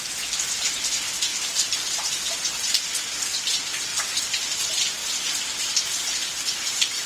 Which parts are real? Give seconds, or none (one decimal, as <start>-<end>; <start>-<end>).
0.0-7.1